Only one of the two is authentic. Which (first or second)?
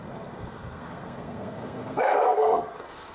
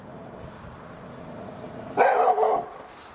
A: second